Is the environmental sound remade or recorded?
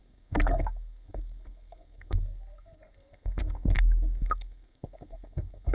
remade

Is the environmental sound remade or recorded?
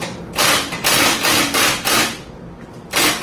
recorded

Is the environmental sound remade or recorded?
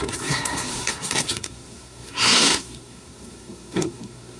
remade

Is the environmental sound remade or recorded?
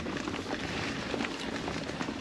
recorded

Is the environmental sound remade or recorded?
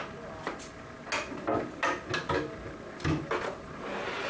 recorded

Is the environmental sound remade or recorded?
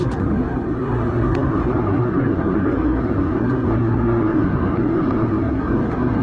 remade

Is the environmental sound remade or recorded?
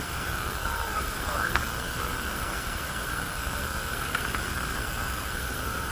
remade